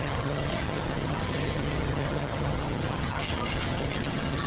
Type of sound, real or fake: fake